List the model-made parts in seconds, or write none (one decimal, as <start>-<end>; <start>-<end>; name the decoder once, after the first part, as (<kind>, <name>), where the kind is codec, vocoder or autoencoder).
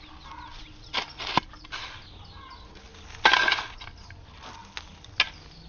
none